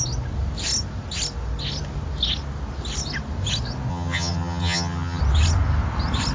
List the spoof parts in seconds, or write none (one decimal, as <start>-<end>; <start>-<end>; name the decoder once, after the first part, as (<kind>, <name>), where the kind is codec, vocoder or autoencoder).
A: 3.9-5.2 (vocoder, HiFi-GAN)